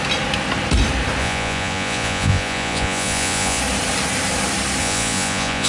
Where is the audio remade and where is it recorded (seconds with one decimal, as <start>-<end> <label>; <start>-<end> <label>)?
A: 0.0-1.2 recorded; 1.2-3.6 remade; 3.6-4.8 recorded; 4.8-5.7 remade